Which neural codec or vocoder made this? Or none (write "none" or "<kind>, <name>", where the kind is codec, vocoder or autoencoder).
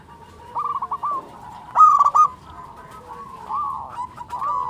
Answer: none